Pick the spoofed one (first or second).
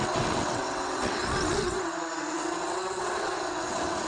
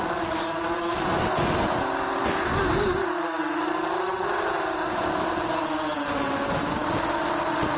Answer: first